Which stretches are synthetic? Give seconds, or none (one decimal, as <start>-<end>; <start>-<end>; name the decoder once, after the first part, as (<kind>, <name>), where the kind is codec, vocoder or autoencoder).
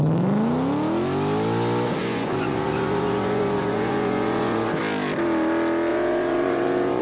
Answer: 2.0-4.8 (vocoder, Vocos); 5.9-7.0